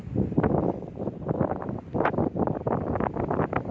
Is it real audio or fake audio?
real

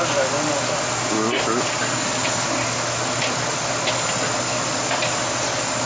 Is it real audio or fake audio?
real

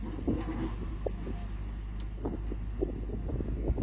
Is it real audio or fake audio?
real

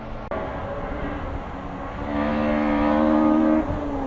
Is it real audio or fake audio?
real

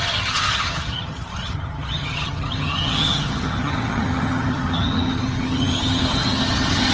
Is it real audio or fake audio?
fake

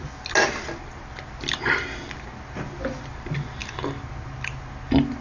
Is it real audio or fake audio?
real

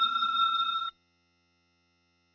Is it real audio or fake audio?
fake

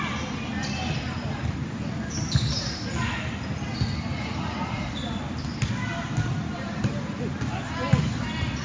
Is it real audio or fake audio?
real